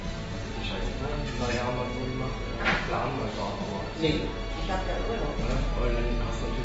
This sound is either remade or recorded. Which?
recorded